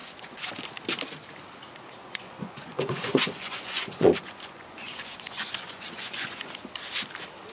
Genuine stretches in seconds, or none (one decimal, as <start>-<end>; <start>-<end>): 0.5-2.0; 6.5-7.5